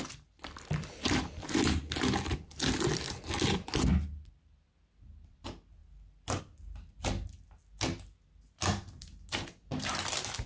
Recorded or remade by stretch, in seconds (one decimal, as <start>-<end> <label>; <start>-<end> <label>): 0.0-10.5 recorded